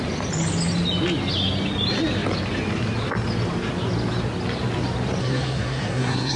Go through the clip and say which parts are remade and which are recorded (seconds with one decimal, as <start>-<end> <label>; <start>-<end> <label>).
0.0-5.2 recorded; 5.2-6.4 remade